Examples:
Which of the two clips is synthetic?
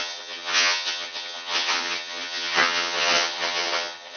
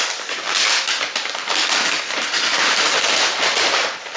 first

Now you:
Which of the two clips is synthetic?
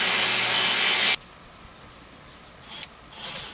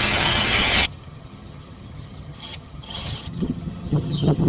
second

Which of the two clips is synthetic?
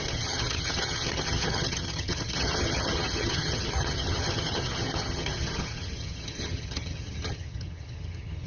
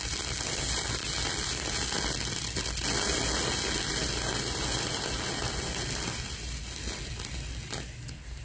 first